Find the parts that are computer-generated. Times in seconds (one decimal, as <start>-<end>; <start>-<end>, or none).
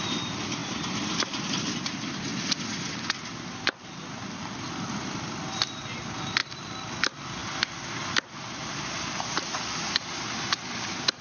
0.0-0.6; 1.1-2.3; 5.0-11.2